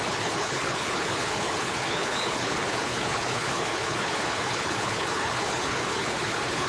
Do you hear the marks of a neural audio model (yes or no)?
yes